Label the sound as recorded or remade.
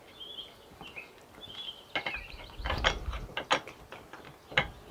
recorded